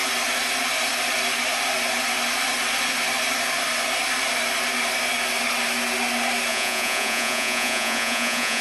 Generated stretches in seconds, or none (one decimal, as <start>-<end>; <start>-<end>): 6.5-8.6